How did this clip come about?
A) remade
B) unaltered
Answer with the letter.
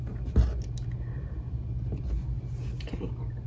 B